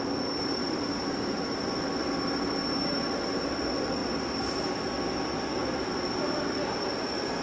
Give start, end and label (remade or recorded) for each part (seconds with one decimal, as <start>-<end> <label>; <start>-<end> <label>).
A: 0.0-0.6 recorded; 0.6-1.4 remade; 1.4-4.0 recorded; 4.0-4.7 remade; 4.7-7.4 recorded